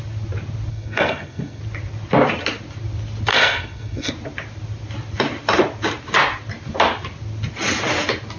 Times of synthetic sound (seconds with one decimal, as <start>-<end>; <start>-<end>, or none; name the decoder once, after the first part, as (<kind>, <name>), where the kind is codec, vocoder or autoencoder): 0.7-1.6 (codec, SNAC); 3.3-4.1